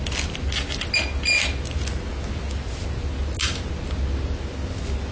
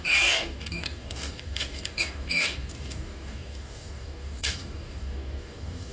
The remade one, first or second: second